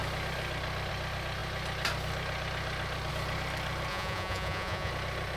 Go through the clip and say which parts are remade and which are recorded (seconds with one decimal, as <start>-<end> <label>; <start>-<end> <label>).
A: 0.0-3.9 recorded; 3.9-4.9 remade; 4.9-5.4 recorded